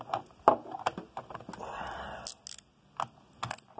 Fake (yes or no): no